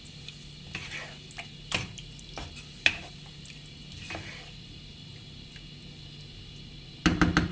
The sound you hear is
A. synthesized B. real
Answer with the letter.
B